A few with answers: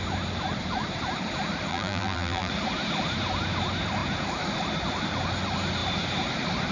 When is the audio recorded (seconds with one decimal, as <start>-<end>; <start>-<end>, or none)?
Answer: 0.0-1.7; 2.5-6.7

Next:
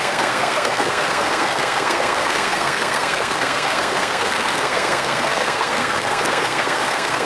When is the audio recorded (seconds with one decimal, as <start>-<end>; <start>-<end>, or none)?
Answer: none

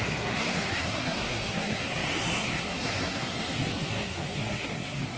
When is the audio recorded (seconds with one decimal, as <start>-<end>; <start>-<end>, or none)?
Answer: none

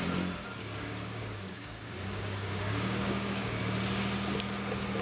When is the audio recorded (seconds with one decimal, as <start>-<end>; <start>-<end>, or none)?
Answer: 0.0-0.6; 3.6-5.0

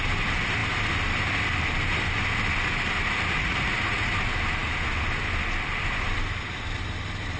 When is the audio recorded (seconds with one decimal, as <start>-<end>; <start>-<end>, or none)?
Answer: 0.0-3.4; 4.1-7.4

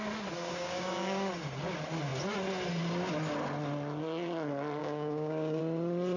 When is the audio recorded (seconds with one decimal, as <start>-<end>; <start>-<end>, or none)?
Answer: 0.0-0.5; 1.3-4.8; 5.6-6.2

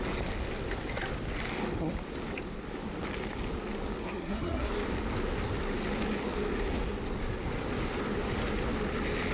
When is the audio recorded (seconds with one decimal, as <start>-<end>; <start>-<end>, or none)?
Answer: 0.0-4.0; 4.7-9.3

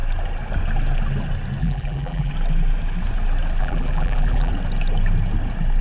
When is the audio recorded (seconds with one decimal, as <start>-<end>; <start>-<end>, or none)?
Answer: 0.0-1.6; 2.3-3.6; 4.5-5.8